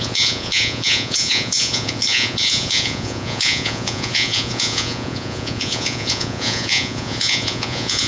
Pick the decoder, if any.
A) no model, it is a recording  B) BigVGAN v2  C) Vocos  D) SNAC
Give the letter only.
C